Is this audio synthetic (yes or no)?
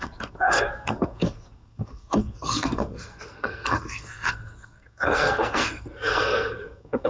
yes